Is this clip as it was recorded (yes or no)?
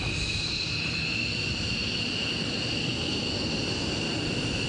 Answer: yes